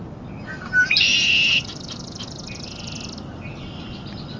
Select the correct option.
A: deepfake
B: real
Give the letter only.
B